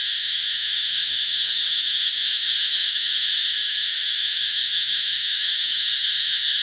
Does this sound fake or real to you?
fake